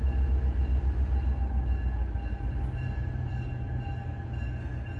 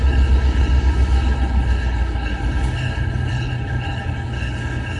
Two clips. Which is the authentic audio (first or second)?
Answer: first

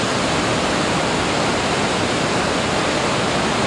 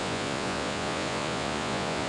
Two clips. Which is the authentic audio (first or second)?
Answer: first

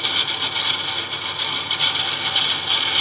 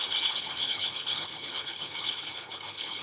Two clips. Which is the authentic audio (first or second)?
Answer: first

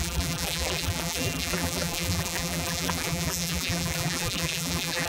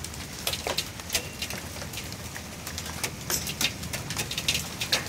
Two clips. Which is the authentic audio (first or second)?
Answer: second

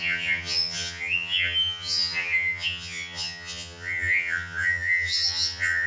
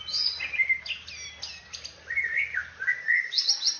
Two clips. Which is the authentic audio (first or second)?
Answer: second